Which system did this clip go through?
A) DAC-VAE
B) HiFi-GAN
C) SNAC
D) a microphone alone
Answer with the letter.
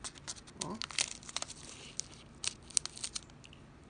D